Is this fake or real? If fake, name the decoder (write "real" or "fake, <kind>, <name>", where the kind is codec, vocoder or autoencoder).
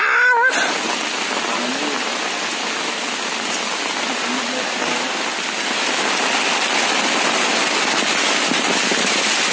real